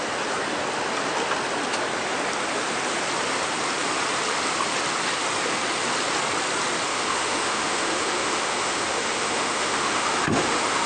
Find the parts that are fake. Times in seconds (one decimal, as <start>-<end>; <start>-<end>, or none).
6.9-10.9